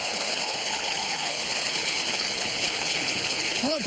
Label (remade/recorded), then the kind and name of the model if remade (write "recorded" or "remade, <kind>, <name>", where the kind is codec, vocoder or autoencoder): remade, codec, HILCodec